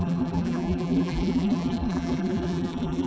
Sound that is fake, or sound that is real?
fake